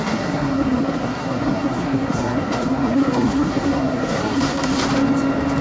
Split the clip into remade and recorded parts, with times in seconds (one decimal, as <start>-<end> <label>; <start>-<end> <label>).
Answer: 0.0-4.7 remade; 4.7-5.6 recorded